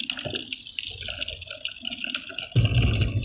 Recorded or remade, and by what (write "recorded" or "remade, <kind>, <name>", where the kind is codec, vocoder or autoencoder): recorded